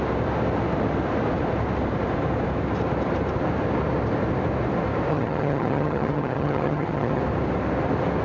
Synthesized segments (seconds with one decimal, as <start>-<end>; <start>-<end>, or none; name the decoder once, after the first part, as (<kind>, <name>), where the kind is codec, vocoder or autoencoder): 5.1-7.2 (vocoder, HiFi-GAN)